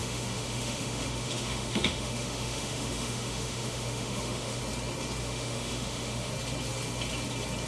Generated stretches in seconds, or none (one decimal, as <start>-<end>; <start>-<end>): 0.0-4.6; 5.2-6.3